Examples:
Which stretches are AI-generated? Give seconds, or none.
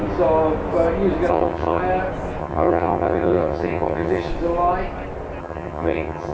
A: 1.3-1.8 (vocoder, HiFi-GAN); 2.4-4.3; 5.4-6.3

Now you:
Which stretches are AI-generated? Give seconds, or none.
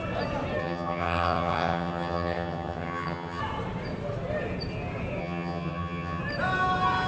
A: 0.6-3.4 (vocoder, HiFi-GAN); 5.2-6.2